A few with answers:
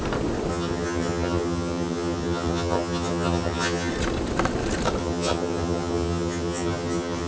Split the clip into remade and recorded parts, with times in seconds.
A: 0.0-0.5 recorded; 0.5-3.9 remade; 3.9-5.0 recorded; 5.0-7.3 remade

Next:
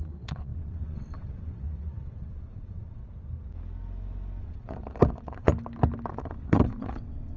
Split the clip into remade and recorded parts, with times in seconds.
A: 0.0-3.0 remade; 3.0-4.4 recorded; 4.4-5.5 remade; 5.5-6.1 recorded; 6.1-7.4 remade

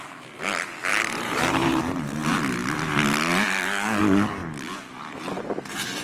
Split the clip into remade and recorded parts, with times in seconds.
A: 0.0-0.9 recorded; 0.9-1.8 remade; 1.8-6.0 recorded

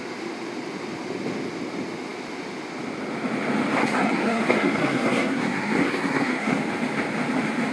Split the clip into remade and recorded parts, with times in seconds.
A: 0.0-3.8 recorded; 3.8-6.6 remade; 6.6-7.7 recorded

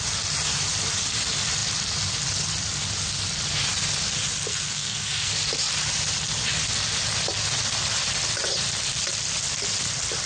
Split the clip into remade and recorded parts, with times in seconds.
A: 0.0-4.5 recorded; 4.5-5.3 remade; 5.3-10.3 recorded

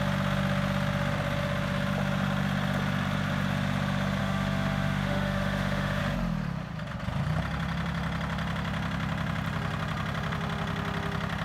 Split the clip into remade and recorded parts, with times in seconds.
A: 0.0-4.2 recorded; 4.2-6.0 remade; 6.0-11.4 recorded